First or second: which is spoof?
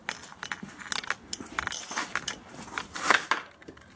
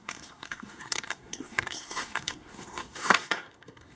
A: second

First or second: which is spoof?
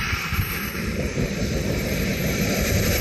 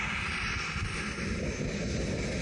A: first